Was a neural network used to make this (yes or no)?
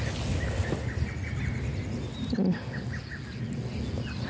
no